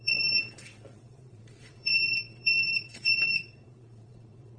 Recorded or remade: remade